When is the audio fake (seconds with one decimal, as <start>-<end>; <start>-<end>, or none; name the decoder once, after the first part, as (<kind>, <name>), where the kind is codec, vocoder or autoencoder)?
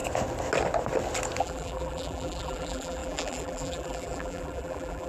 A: 1.4-5.1 (vocoder, BigVGAN v2)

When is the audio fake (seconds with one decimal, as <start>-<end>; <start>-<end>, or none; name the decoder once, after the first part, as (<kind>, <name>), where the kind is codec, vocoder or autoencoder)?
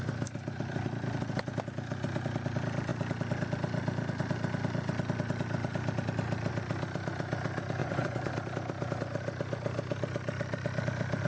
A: 7.8-8.3 (vocoder, Vocos)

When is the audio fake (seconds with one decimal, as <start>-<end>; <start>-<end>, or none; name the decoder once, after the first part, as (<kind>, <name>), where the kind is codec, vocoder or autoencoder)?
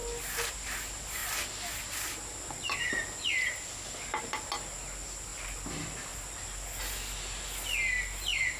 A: none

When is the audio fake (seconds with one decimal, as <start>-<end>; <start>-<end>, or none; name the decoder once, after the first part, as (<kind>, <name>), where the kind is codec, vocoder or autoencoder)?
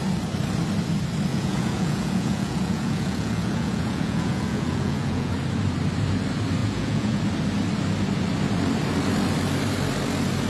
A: 1.3-5.3 (vocoder, Vocos); 6.6-7.2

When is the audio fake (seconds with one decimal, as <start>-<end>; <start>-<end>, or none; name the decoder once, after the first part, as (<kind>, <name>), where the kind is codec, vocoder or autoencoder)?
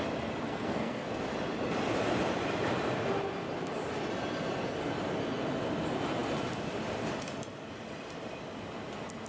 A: 0.5-1.2 (codec, SNAC)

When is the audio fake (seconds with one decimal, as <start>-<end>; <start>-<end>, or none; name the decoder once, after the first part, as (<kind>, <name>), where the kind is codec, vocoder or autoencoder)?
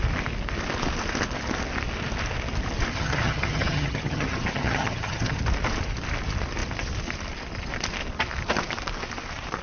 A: 2.9-5.4 (vocoder, HiFi-GAN)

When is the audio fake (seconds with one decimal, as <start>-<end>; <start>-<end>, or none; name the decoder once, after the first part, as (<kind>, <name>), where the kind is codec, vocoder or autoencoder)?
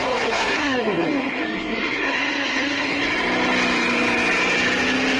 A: 0.0-3.0 (codec, SNAC)